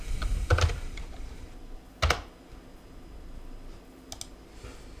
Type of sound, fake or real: real